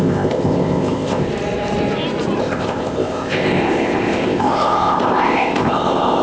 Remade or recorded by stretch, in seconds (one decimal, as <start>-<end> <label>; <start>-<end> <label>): 0.0-1.3 remade; 1.3-2.4 recorded; 2.4-6.2 remade